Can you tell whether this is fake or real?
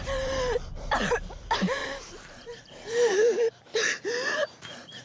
fake